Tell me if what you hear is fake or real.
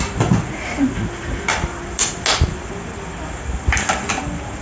real